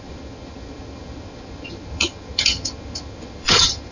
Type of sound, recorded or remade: remade